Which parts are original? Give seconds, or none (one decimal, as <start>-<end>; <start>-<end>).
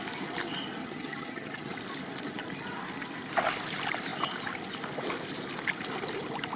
0.0-0.8; 1.7-6.6